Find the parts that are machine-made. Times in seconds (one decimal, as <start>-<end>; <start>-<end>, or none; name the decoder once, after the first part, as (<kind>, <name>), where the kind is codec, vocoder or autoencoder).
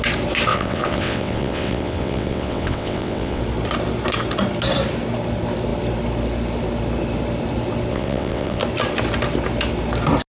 0.5-3.4 (vocoder, WaveNeXt); 7.9-8.6